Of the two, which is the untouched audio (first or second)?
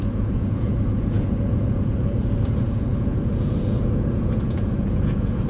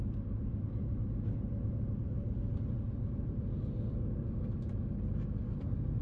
second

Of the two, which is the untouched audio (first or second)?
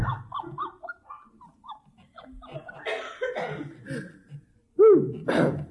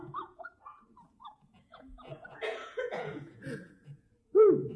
first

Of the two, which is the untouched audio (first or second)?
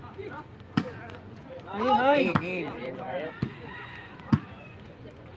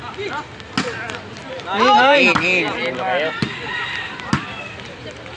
second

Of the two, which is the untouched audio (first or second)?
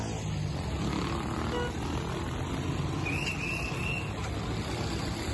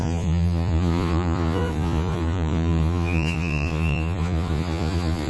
first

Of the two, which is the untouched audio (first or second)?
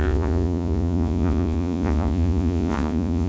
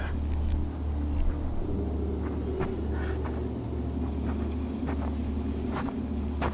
second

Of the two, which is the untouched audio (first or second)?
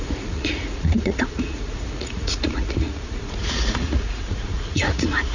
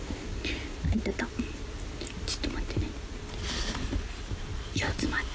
second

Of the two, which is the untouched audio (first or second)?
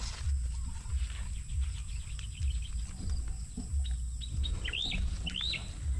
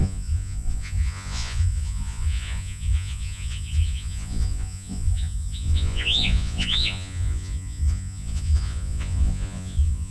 first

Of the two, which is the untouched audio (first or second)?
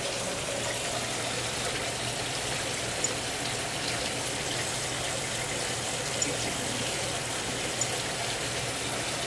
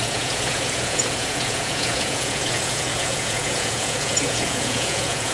first